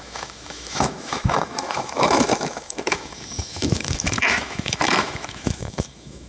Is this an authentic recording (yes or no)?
no